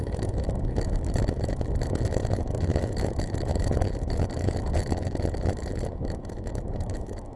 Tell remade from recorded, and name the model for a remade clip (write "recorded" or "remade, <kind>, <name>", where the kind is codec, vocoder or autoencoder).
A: remade, autoencoder, DAC-VAE